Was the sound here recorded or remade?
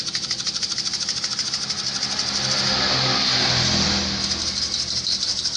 recorded